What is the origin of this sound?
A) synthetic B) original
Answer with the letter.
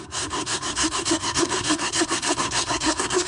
A